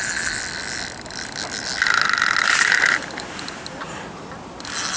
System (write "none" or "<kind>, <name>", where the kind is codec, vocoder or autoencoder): none